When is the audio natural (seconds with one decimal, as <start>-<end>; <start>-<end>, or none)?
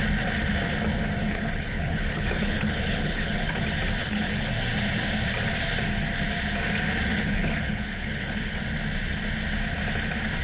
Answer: 0.0-1.2; 3.6-4.0; 4.5-7.1; 8.6-10.4